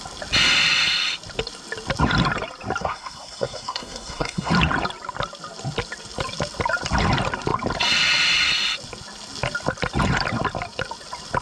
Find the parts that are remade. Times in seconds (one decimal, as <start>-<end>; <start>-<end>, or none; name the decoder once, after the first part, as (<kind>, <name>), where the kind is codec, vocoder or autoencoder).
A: 2.8-4.5 (codec, SNAC)